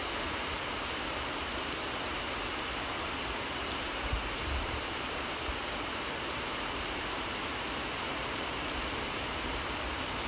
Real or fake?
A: fake